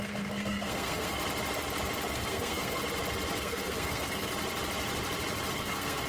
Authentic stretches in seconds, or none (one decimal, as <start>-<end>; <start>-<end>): 1.2-2.1; 2.8-3.4; 4.3-5.5